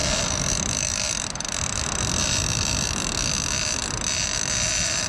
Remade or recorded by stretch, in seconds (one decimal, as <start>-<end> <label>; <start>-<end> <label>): 0.0-2.9 remade; 2.9-5.1 recorded